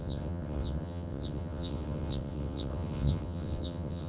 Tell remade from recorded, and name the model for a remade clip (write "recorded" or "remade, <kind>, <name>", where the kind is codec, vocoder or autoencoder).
remade, vocoder, WaveNeXt